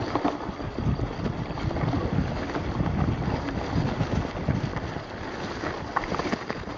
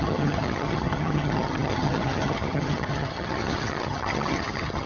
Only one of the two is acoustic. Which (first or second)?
first